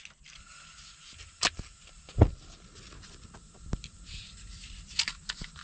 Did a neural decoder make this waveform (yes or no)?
no